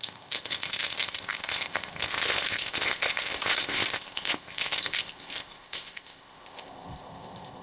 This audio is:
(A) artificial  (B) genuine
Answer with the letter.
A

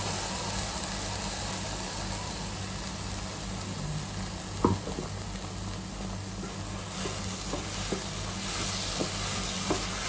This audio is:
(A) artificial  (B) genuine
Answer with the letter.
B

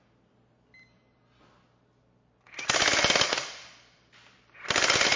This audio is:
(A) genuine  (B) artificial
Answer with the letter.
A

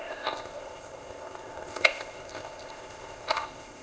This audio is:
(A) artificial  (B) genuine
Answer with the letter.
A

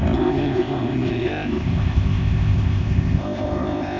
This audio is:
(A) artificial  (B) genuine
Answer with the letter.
A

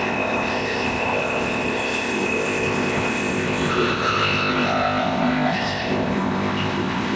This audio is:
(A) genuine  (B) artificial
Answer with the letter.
B